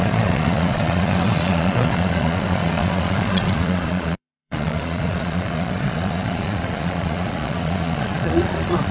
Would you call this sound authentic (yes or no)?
no